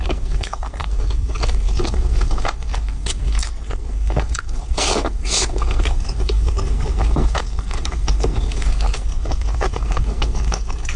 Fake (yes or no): yes